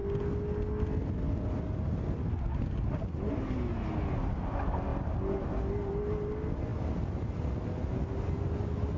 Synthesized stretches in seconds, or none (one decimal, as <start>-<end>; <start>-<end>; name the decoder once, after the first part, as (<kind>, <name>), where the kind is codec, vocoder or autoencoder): none